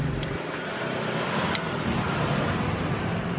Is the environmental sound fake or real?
real